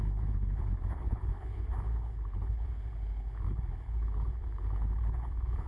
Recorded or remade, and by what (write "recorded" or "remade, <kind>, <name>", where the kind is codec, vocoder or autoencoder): remade, codec, HILCodec